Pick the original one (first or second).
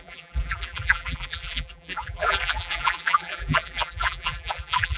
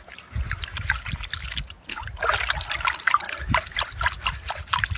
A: second